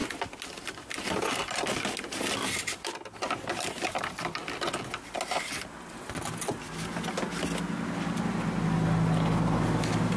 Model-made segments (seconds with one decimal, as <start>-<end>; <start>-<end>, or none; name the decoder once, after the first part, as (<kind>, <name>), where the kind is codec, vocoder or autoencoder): none